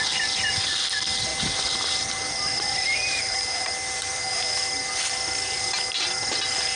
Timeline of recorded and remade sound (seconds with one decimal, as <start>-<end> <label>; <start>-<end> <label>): 0.0-1.3 recorded; 1.3-4.2 remade; 4.2-6.8 recorded